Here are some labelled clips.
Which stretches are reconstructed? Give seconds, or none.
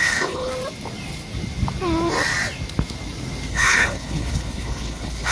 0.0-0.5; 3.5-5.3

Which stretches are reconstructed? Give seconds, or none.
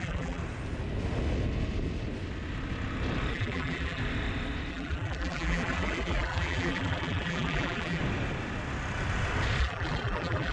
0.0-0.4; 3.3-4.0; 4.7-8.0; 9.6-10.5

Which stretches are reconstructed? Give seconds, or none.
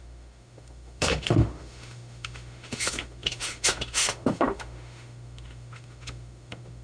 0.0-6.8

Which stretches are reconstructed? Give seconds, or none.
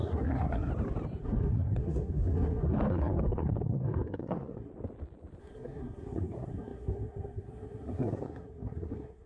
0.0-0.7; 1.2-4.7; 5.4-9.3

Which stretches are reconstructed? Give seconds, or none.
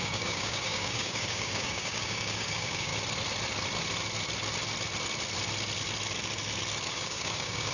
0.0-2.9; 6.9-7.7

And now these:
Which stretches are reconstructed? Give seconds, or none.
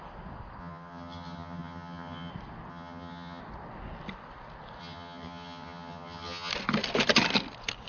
0.6-2.3; 2.7-3.4; 4.8-6.5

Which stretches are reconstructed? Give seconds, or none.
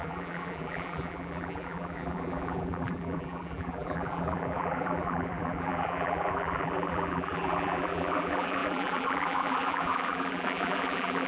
0.0-11.3